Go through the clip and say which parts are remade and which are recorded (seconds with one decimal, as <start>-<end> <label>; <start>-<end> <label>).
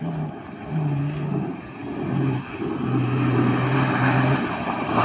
0.0-5.0 recorded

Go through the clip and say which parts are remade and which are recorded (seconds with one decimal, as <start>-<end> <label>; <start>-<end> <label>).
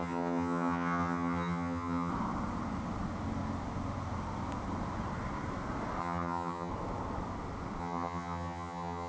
0.0-2.1 remade; 2.1-6.0 recorded; 6.0-6.7 remade; 6.7-7.8 recorded; 7.8-9.1 remade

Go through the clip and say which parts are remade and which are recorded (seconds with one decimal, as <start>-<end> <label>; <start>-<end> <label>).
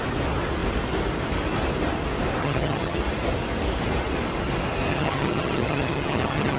0.0-2.4 recorded; 2.4-3.0 remade; 3.0-4.9 recorded; 4.9-6.6 remade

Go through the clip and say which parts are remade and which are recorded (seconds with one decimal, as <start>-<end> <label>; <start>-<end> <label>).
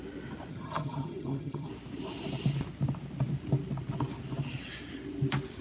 0.0-0.5 recorded; 0.5-1.7 remade; 1.7-5.6 recorded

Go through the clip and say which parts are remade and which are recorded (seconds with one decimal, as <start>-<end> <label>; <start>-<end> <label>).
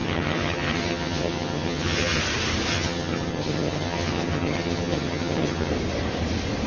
0.0-2.2 remade; 2.2-2.7 recorded; 2.7-5.7 remade; 5.7-6.7 recorded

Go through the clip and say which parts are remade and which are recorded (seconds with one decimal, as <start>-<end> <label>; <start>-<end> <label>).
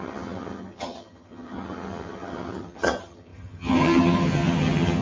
0.0-5.0 remade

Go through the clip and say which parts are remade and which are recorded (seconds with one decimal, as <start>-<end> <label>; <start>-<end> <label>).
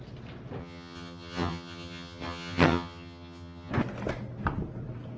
0.0-0.6 recorded; 0.6-3.7 remade; 3.7-5.2 recorded